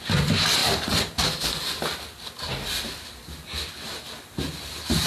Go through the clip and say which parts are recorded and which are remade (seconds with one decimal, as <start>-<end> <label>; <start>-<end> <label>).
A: 0.0-5.1 recorded